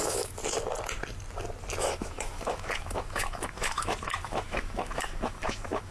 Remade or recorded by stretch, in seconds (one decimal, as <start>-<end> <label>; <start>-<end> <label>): 0.0-0.4 remade; 0.4-1.8 recorded; 1.8-5.9 remade